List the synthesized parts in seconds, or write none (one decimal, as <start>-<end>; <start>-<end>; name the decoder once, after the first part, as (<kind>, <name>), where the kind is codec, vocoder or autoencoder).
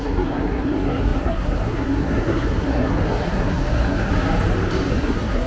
0.0-4.1 (codec, SNAC); 4.9-5.5